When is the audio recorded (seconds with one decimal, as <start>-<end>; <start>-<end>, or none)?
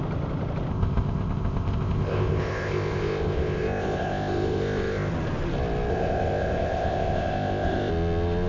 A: 0.0-0.7; 5.1-5.9; 7.9-8.5